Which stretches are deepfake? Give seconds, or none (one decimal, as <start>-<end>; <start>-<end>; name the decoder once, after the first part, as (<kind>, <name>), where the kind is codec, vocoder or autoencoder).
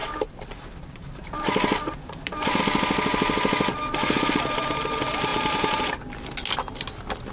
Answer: 0.0-2.6 (vocoder, BigVGAN v2); 5.3-5.8